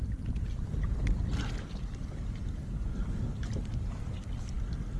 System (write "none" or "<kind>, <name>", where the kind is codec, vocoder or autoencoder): none